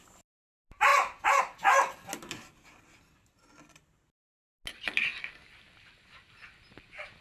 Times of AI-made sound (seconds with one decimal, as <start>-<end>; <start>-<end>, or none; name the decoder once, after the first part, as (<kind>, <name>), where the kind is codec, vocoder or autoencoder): none